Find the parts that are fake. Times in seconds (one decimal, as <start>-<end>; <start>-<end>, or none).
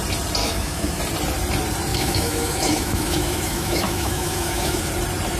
0.4-1.0; 1.9-4.9